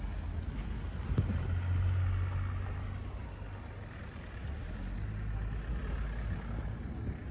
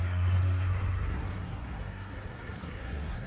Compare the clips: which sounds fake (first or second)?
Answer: second